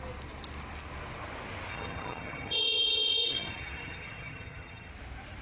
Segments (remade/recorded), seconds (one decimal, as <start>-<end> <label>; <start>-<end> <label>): 0.0-1.7 recorded; 1.7-4.9 remade; 4.9-5.4 recorded